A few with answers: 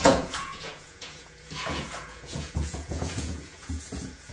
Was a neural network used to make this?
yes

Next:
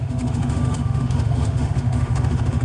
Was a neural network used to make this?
yes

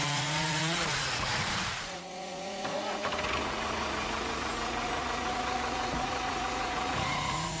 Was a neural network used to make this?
yes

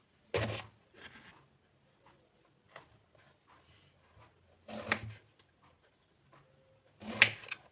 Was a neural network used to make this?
no